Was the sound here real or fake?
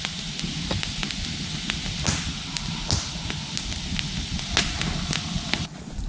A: real